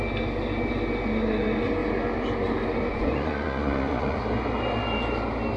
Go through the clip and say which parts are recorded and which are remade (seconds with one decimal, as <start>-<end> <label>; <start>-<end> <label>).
0.0-2.9 recorded; 2.9-4.2 remade; 4.2-5.6 recorded